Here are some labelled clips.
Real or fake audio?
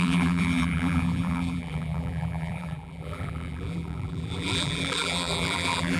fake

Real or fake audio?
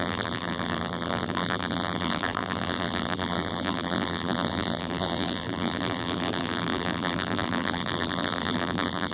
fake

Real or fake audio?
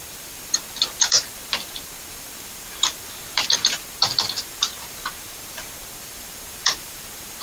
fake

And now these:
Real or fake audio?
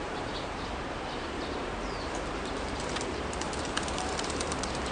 fake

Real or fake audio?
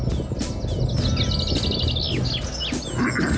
real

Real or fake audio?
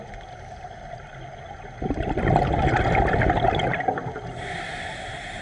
real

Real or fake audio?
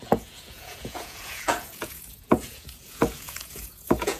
fake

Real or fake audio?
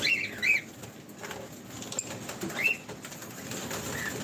real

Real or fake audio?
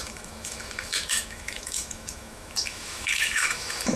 fake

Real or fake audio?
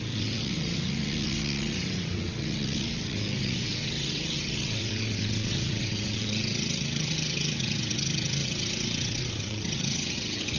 fake